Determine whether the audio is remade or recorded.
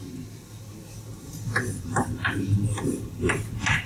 recorded